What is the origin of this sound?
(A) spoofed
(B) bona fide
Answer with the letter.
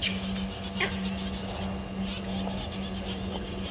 B